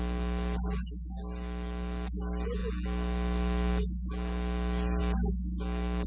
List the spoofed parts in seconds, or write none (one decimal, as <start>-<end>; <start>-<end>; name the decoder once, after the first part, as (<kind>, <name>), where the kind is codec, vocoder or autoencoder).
none